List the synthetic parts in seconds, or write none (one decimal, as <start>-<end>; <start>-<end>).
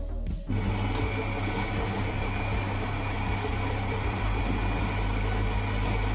3.5-4.4